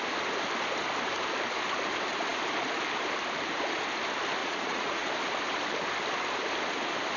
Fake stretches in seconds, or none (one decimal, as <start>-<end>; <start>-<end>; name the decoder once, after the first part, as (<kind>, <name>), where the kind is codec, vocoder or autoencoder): 4.4-5.1 (vocoder, Vocos)